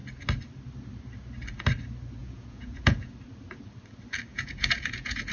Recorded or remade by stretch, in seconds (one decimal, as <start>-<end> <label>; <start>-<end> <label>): 0.0-2.2 recorded; 2.2-3.1 remade; 3.1-4.3 recorded; 4.3-5.3 remade